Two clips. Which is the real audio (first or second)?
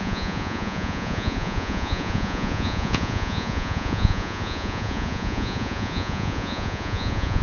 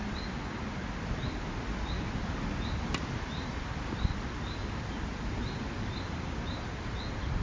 second